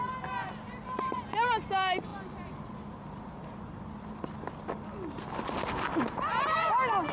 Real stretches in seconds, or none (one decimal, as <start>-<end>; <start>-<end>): 0.0-7.1